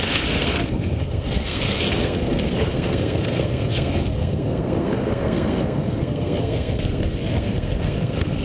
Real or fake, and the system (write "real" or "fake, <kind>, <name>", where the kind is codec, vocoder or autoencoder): fake, codec, SNAC